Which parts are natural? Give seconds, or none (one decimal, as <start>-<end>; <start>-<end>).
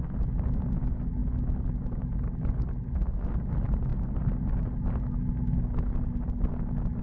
0.0-7.0